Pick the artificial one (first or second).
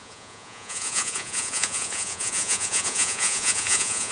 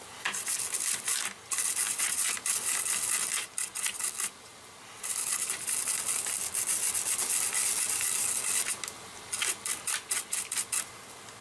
first